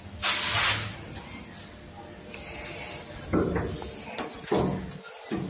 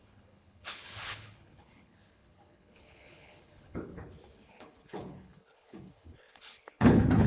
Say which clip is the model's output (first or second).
second